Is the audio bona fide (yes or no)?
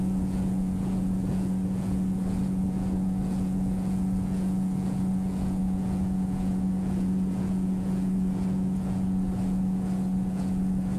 no